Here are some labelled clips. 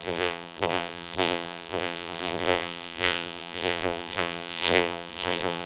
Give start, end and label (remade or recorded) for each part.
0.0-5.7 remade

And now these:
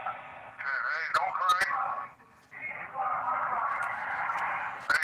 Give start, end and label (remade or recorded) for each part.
0.0-5.0 recorded

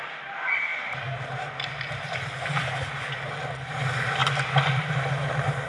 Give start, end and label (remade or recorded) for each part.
0.0-5.7 recorded

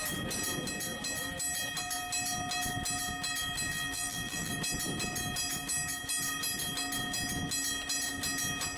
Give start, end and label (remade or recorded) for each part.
0.0-3.7 recorded; 3.7-4.5 remade; 4.5-8.8 recorded